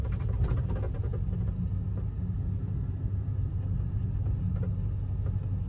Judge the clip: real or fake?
real